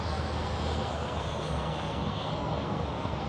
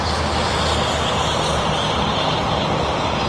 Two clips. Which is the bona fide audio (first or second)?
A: second